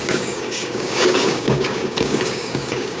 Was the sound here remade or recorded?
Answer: remade